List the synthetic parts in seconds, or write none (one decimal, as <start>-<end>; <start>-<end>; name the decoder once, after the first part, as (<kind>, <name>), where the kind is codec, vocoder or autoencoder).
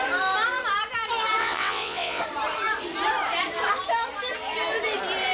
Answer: 1.4-2.2 (vocoder, WaveNeXt)